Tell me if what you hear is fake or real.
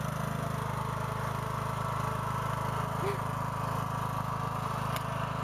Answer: real